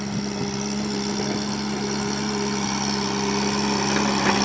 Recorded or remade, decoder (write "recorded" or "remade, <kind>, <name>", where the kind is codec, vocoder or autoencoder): recorded